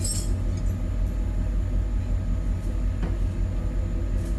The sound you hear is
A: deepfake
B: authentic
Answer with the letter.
B